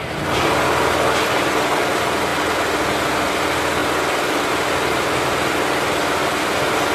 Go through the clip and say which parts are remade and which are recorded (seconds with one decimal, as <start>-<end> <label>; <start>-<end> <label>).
0.0-6.9 recorded